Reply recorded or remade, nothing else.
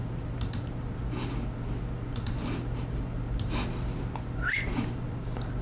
recorded